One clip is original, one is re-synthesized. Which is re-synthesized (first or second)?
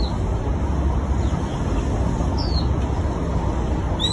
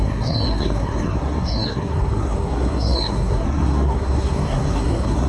second